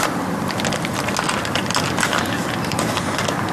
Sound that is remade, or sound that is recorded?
recorded